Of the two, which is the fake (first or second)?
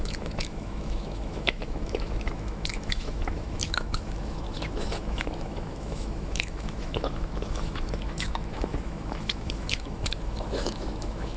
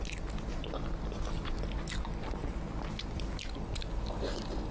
first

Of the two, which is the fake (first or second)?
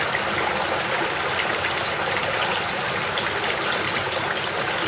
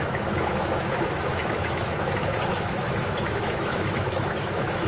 second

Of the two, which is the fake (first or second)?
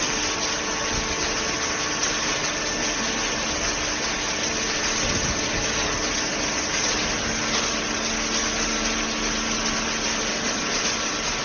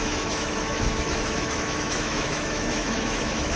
second